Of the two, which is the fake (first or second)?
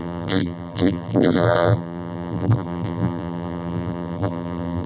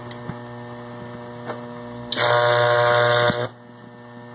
first